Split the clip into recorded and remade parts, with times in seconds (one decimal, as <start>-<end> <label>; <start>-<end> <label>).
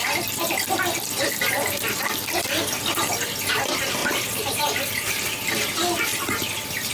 0.0-4.0 recorded; 4.0-5.1 remade; 5.1-6.9 recorded